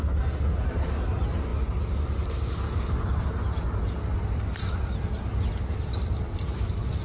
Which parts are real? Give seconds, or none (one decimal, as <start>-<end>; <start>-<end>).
0.0-7.0